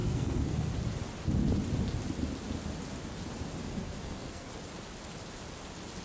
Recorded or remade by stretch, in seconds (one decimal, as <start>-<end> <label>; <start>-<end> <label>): 0.0-0.7 remade; 0.7-3.6 recorded; 3.6-4.5 remade; 4.5-6.0 recorded